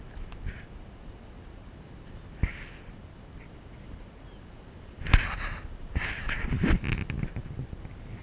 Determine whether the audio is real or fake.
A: real